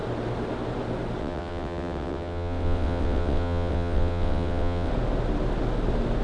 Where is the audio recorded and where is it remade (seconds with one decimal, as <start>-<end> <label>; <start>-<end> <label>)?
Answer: 0.0-1.2 recorded; 1.2-4.9 remade; 4.9-6.2 recorded